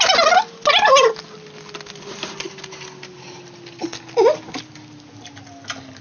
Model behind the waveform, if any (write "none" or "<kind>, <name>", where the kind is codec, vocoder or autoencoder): none